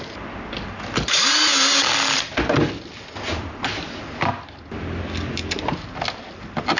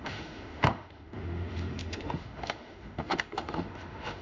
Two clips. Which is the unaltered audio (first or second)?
first